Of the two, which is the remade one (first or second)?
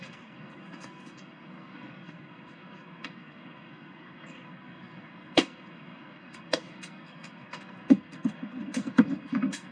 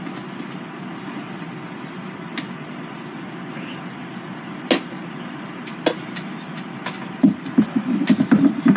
first